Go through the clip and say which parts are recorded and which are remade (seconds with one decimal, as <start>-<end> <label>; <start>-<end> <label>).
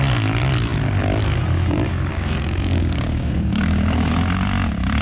0.0-2.1 recorded; 2.1-4.1 remade; 4.1-5.0 recorded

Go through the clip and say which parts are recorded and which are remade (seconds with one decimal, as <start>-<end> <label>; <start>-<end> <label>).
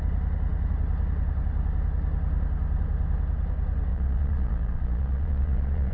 0.0-3.9 recorded; 3.9-5.9 remade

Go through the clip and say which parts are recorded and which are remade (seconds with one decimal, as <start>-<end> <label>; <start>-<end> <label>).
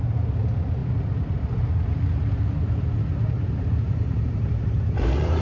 0.0-3.2 recorded; 3.2-5.4 remade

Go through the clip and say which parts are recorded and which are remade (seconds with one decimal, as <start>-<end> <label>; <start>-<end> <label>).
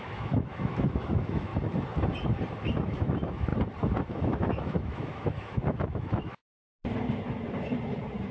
0.0-1.5 remade; 1.5-2.5 recorded; 2.5-3.5 remade; 3.5-4.0 recorded; 4.0-6.4 remade; 6.4-8.3 recorded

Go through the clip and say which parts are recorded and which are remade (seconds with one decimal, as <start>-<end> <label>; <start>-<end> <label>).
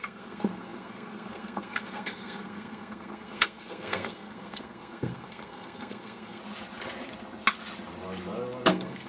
0.0-6.4 remade; 6.4-8.7 recorded; 8.7-9.1 remade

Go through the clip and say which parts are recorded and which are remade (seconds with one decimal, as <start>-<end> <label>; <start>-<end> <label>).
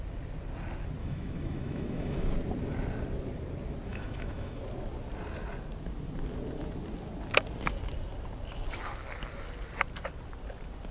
0.0-1.0 recorded; 1.0-2.3 remade; 2.3-3.9 recorded; 3.9-4.6 remade; 4.6-10.9 recorded